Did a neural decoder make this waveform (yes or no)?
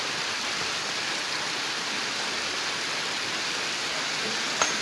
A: no